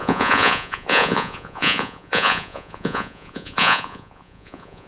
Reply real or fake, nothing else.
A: fake